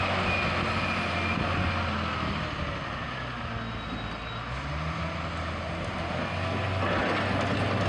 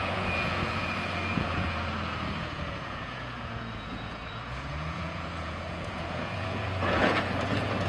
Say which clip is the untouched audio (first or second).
first